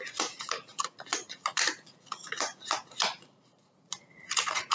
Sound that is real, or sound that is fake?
fake